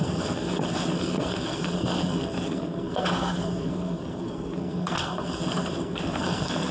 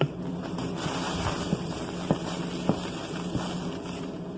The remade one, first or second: first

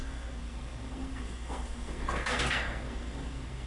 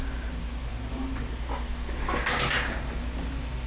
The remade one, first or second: first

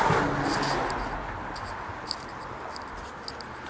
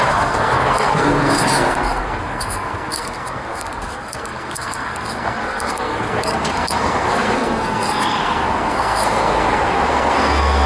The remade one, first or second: second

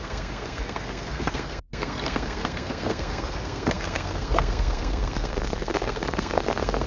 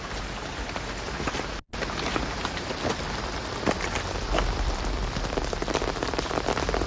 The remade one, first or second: first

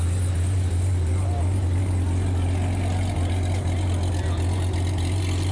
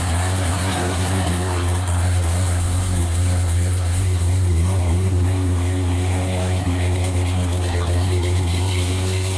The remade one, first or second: second